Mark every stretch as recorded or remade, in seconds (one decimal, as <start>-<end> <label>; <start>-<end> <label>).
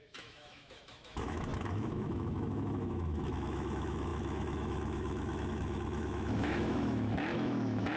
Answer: 0.0-8.0 remade